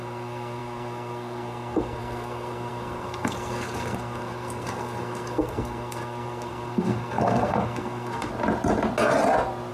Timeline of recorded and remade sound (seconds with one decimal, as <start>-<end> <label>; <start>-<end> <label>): 0.0-8.3 remade; 8.3-9.7 recorded